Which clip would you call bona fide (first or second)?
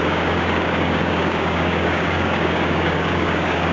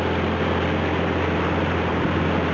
second